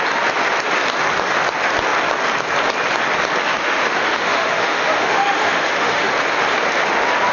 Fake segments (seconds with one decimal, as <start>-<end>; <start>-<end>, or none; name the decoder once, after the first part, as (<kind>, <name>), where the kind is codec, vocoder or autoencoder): 3.5-6.1 (autoencoder, DAC-VAE)